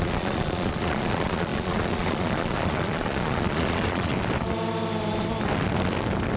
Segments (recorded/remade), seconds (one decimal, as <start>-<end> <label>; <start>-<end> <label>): 0.0-4.1 remade; 4.1-6.4 recorded